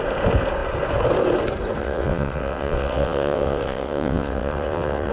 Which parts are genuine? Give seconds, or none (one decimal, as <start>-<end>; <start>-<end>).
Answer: 0.0-1.8